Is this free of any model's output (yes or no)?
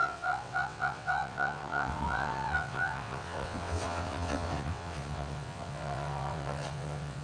no